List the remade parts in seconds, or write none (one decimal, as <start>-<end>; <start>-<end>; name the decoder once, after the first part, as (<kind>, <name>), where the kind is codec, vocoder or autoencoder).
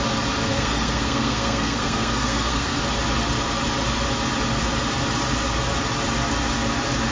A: 0.5-2.8 (codec, SNAC)